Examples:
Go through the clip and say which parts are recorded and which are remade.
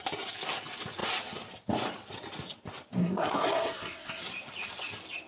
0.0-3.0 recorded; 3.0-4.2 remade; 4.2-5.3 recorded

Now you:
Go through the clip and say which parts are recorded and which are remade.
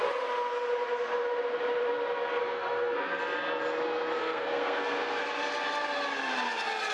0.0-2.4 recorded; 2.4-3.2 remade; 3.2-4.2 recorded; 4.2-5.2 remade; 5.2-6.9 recorded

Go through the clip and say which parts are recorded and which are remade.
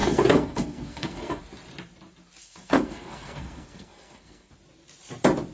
0.0-1.4 remade; 1.4-2.4 recorded; 2.4-4.5 remade; 4.5-5.5 recorded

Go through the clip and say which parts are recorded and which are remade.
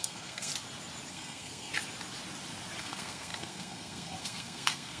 0.0-0.5 remade; 0.5-1.1 recorded; 1.1-1.7 remade; 1.7-2.8 recorded; 2.8-5.0 remade